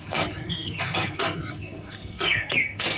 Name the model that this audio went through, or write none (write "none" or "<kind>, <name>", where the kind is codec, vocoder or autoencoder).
codec, SNAC